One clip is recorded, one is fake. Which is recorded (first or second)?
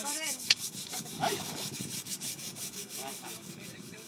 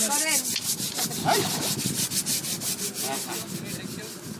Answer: second